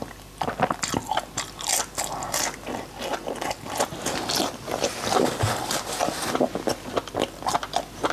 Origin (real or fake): real